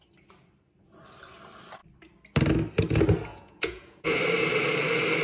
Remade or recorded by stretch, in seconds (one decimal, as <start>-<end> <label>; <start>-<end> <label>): 0.0-3.3 recorded; 3.3-4.2 remade; 4.2-5.2 recorded